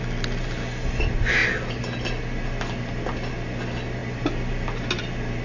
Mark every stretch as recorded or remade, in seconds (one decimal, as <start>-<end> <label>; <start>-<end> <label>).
0.0-5.4 recorded